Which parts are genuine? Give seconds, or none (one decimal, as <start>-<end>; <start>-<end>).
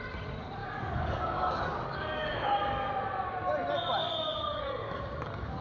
0.0-0.6; 2.9-4.0